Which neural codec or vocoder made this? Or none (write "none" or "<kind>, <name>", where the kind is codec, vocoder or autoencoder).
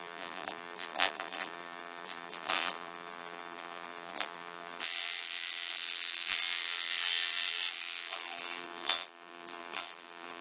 vocoder, BigVGAN v2